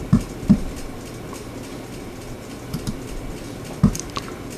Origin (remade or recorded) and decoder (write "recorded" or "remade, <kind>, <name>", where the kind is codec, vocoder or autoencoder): recorded